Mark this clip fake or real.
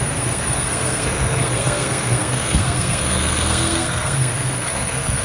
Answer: fake